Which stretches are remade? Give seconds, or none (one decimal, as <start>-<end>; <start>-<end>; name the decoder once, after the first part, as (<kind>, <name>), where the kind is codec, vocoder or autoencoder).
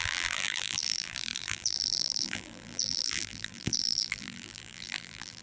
0.0-5.4 (vocoder, BigVGAN v2)